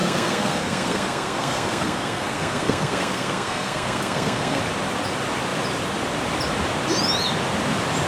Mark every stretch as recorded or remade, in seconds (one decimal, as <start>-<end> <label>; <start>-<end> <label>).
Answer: 0.0-4.6 remade; 4.6-8.1 recorded